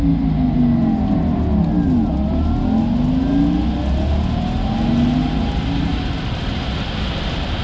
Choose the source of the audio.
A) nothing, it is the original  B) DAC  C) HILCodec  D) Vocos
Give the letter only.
A